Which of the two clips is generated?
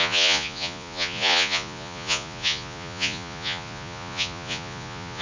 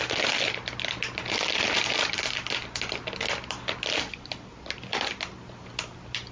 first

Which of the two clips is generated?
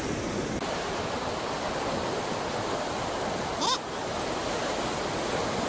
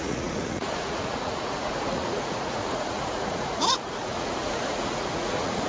second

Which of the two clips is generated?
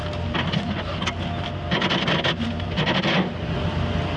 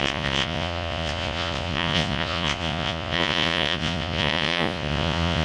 second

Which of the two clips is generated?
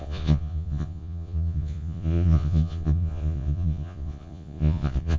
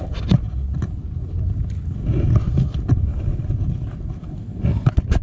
first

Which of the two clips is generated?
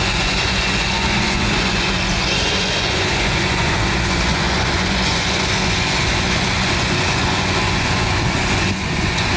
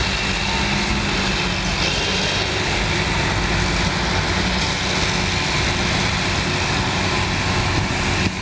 first